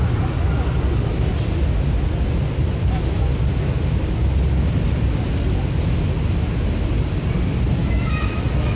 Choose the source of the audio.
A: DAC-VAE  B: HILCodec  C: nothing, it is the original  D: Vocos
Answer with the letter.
C